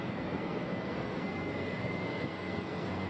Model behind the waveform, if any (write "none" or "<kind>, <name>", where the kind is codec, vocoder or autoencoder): codec, SNAC